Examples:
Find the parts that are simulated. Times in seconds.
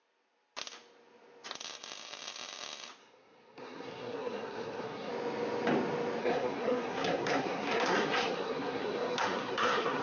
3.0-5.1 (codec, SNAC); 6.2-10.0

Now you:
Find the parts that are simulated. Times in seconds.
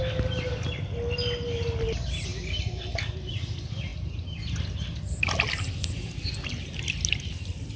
none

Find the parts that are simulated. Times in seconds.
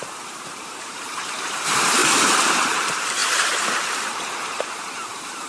0.0-2.0 (vocoder, BigVGAN v2); 2.7-5.5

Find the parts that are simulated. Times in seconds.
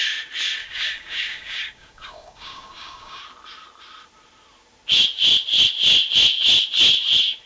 0.6-3.2 (codec, DAC)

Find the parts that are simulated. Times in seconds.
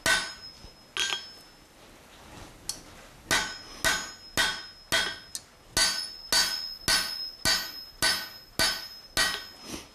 none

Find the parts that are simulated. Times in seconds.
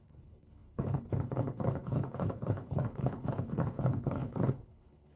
0.0-5.2 (codec, HILCodec)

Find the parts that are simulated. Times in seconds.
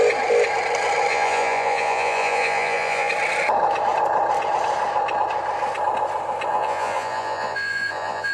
1.1-3.1 (vocoder, Vocos); 6.5-8.3